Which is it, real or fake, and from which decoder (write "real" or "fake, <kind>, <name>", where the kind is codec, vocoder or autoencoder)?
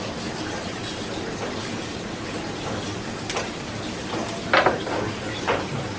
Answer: real